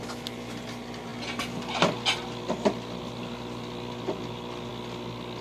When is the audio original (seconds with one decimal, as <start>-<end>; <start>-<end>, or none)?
0.0-5.4